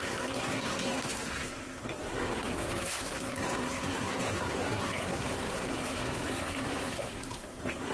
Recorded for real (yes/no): no